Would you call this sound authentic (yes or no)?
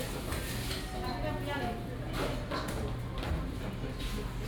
yes